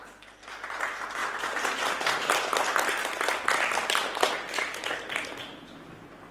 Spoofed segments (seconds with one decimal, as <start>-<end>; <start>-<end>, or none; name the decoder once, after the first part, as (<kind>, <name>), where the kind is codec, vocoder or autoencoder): none